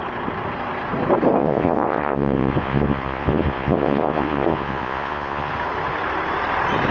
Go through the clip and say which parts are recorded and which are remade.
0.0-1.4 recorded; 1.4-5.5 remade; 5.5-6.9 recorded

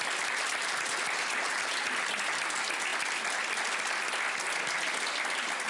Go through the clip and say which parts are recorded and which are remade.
0.0-5.7 recorded

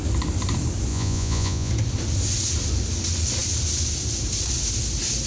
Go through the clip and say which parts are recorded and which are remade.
0.0-0.9 recorded; 0.9-1.7 remade; 1.7-5.3 recorded

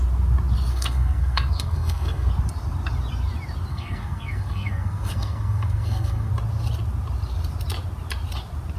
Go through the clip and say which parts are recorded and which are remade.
0.0-0.7 recorded; 0.7-2.3 remade; 2.3-3.7 recorded; 3.7-6.3 remade; 6.3-8.8 recorded